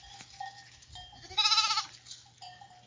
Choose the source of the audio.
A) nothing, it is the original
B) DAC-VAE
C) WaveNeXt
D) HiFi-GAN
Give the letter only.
A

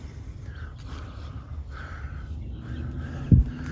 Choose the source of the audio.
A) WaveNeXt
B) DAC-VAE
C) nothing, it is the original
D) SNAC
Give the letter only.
C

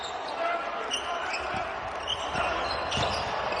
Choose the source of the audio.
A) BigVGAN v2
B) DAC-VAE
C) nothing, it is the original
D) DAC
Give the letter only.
C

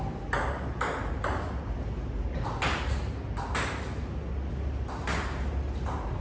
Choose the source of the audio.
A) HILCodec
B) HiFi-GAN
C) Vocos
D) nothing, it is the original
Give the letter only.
D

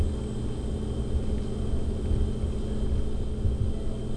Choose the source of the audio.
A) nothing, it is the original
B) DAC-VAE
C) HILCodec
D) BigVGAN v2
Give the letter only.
A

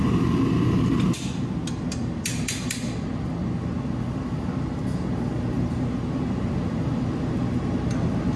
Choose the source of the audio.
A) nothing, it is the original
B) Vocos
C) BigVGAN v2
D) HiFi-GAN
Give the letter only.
A